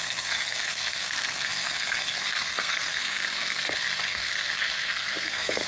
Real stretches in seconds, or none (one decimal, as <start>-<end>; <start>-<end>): none